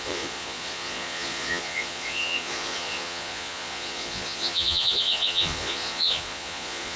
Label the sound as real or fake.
fake